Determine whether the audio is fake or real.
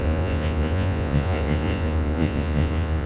fake